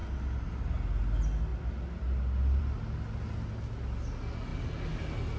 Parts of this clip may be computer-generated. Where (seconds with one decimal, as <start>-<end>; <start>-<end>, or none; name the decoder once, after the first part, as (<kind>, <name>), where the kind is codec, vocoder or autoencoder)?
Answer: none